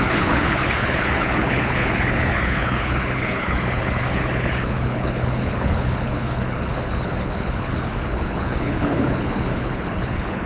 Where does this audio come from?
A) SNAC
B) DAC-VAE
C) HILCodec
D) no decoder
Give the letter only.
C